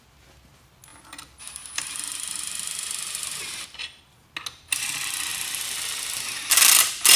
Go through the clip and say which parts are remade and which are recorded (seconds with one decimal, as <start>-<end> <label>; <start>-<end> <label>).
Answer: 0.0-7.2 recorded